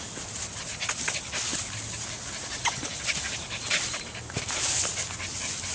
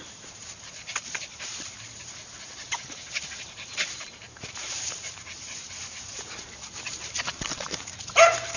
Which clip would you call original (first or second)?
first